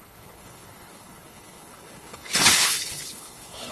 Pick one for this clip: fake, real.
fake